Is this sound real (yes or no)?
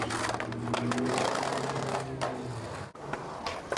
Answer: yes